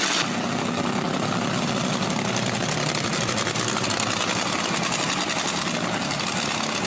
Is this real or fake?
real